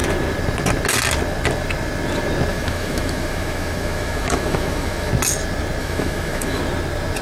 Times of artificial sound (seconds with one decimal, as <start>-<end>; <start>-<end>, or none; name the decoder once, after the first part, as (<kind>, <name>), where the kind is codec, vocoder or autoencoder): 2.5-5.1 (autoencoder, DAC-VAE); 5.8-6.6